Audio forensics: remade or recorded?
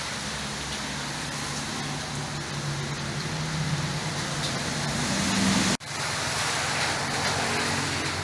recorded